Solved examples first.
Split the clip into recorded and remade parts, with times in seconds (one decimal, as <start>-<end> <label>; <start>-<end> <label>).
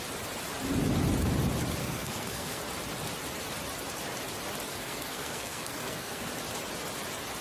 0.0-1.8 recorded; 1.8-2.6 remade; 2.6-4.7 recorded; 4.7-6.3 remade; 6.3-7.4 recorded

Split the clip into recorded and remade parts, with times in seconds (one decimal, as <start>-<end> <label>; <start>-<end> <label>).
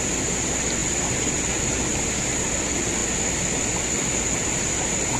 0.0-5.2 recorded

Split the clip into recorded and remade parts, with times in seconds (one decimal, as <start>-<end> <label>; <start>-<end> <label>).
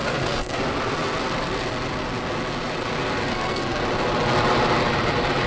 0.0-0.6 remade; 0.6-3.3 recorded; 3.3-3.8 remade; 3.8-5.5 recorded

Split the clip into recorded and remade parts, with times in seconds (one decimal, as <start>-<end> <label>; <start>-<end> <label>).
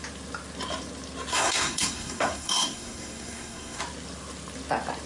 0.0-1.3 recorded; 1.3-3.8 remade; 3.8-5.1 recorded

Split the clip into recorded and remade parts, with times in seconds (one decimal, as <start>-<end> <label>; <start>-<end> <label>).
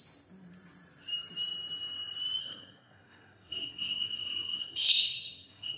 0.0-2.4 recorded; 2.4-5.8 remade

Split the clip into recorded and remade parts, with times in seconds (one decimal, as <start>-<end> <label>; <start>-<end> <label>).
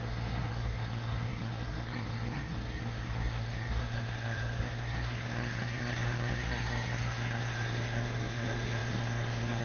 0.0-9.6 remade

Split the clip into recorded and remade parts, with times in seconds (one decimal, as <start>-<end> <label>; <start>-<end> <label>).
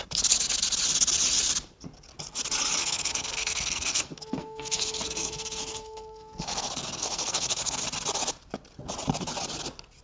0.0-2.8 recorded; 2.8-7.8 remade; 7.8-10.0 recorded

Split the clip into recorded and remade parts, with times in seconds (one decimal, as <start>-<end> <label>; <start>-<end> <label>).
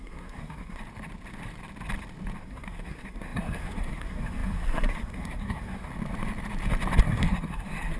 0.0-0.8 remade; 0.8-2.4 recorded; 2.4-5.9 remade; 5.9-7.0 recorded; 7.0-8.0 remade